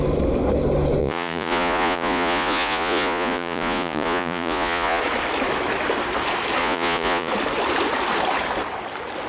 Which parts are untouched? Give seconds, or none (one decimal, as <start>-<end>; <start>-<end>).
0.0-1.0; 5.0-6.6; 7.3-9.3